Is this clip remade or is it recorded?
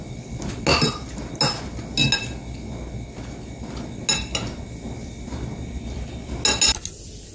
recorded